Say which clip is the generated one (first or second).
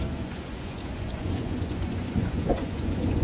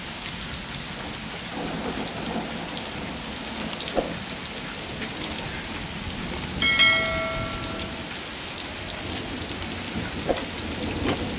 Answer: first